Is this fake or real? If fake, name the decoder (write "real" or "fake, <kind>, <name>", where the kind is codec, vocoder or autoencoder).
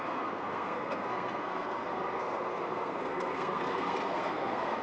fake, codec, SNAC